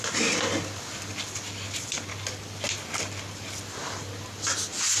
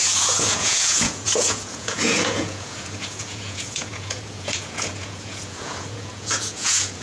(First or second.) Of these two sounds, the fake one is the second